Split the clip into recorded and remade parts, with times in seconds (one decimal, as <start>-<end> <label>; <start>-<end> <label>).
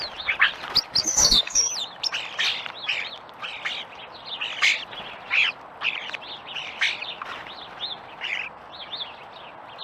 0.0-1.0 recorded; 1.0-1.7 remade; 1.7-9.8 recorded